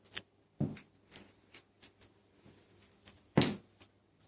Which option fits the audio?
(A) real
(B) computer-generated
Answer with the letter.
A